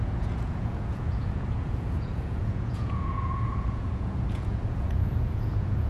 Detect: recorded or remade remade